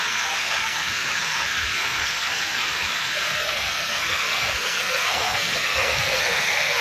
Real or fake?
fake